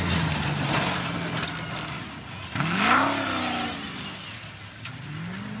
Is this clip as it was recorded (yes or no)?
yes